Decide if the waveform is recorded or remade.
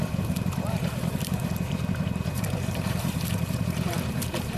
remade